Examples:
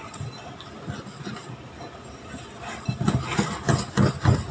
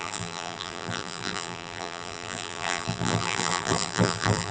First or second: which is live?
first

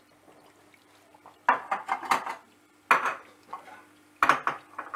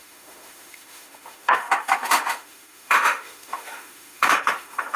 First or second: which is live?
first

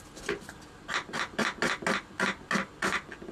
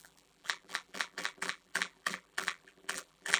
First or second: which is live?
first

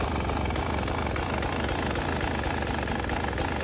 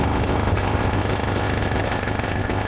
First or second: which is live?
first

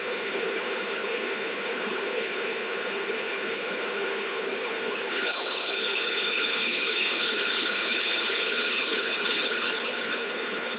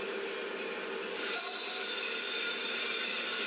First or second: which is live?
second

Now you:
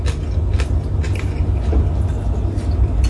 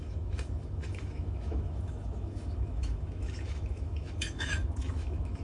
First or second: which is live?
first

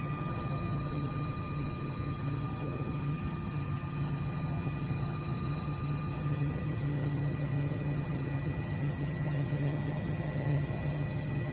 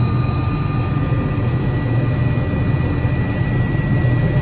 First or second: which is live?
second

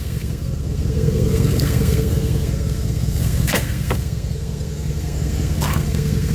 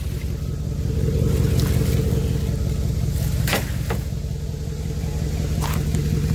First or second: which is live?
second